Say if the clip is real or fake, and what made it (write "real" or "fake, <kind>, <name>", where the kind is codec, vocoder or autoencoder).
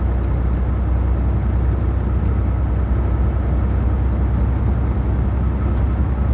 real